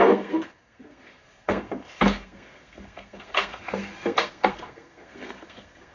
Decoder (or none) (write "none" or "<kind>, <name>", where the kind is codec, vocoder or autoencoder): codec, SNAC